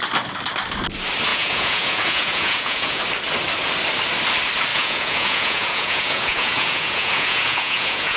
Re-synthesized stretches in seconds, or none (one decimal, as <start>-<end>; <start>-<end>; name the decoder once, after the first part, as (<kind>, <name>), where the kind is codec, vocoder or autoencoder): 1.3-3.0 (vocoder, Vocos); 4.7-8.2